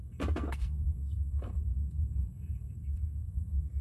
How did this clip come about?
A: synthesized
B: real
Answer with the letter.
A